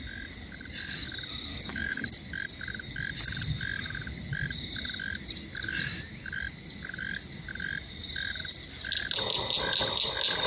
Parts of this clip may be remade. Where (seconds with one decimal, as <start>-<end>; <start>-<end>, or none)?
1.5-2.1